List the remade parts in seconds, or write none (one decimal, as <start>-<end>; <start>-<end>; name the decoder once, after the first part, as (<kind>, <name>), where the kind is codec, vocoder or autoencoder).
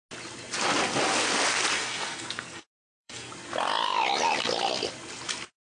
1.7-3.3 (codec, SNAC)